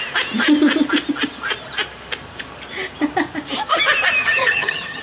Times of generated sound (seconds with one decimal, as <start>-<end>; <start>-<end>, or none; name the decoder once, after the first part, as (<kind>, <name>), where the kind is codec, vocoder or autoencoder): 4.2-5.0 (vocoder, HiFi-GAN)